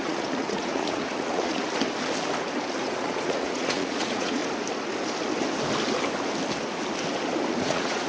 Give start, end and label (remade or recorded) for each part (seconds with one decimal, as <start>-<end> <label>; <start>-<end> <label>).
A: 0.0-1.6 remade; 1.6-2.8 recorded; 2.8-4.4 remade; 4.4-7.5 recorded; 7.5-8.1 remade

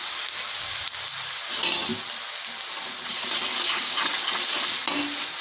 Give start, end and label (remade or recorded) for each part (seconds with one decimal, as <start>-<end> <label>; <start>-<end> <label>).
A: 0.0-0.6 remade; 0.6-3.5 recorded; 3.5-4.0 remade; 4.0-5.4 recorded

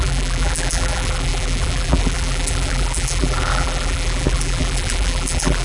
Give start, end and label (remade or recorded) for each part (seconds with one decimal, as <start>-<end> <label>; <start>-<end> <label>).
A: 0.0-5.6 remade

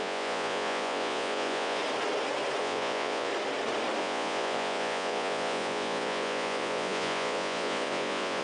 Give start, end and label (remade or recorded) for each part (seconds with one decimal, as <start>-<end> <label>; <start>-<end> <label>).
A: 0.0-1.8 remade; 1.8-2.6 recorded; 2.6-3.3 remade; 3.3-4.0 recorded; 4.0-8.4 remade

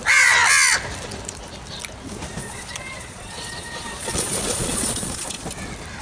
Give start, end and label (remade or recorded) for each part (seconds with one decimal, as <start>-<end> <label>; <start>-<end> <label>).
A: 0.0-2.4 recorded; 2.4-5.4 remade; 5.4-6.0 recorded

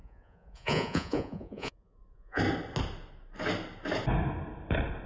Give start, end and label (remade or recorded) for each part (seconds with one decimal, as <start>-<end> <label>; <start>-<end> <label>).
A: 0.0-2.4 remade; 2.4-5.1 recorded